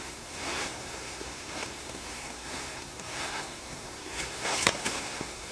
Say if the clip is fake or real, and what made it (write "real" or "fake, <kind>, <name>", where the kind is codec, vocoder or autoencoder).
fake, codec, SNAC